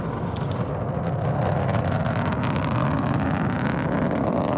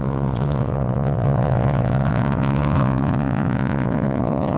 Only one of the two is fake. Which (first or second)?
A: second